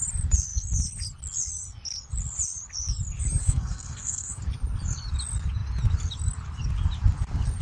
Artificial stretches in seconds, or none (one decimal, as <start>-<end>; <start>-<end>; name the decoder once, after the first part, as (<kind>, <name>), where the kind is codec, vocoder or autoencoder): 3.4-4.4 (codec, SNAC)